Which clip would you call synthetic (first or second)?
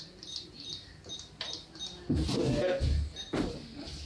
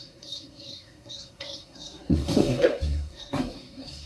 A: second